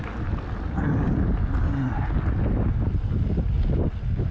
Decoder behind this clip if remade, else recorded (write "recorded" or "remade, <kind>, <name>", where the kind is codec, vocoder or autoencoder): recorded